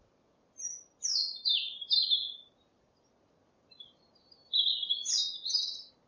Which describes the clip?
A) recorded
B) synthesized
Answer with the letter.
A